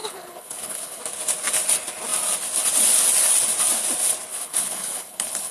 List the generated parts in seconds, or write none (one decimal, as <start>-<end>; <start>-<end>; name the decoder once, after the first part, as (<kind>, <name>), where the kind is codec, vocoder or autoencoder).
0.0-1.0 (codec, HILCodec); 4.3-5.5